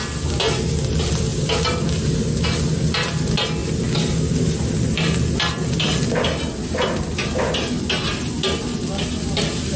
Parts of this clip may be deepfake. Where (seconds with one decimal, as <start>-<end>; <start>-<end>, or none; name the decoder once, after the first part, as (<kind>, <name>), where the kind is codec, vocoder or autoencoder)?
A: none